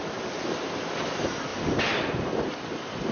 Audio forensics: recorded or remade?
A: recorded